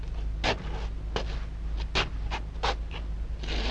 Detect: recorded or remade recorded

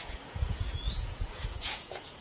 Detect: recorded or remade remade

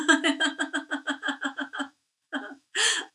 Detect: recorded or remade remade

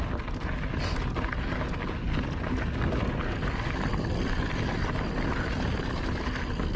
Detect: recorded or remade recorded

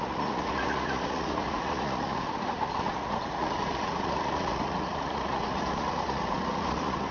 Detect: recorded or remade remade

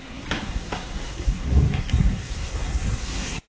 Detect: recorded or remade remade